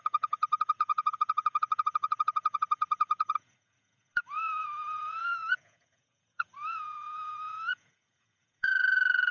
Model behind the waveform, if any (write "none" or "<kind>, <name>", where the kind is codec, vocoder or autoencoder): vocoder, Vocos